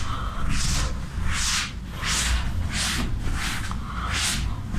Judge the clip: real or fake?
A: real